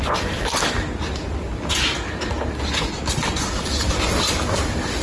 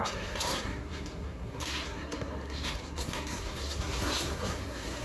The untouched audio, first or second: first